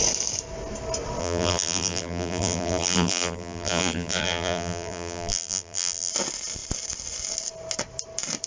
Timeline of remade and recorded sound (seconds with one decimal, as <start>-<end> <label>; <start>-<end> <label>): 0.0-1.2 recorded; 1.2-6.1 remade; 6.1-8.5 recorded